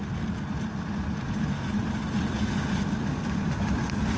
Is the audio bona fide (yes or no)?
yes